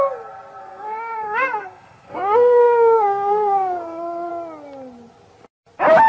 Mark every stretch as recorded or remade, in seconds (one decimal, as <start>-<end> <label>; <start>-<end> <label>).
0.0-0.6 recorded; 0.6-4.3 remade; 4.3-6.1 recorded